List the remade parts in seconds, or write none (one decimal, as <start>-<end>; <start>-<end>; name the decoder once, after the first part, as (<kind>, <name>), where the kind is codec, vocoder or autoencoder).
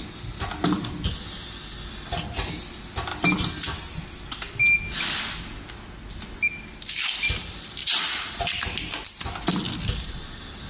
7.8-8.3 (vocoder, Vocos)